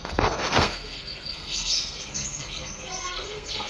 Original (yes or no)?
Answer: no